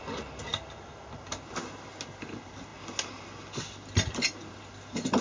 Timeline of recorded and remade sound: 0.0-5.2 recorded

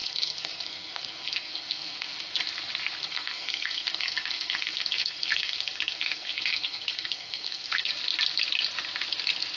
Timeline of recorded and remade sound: 0.0-2.4 remade; 2.4-3.0 recorded; 3.0-7.9 remade; 7.9-9.6 recorded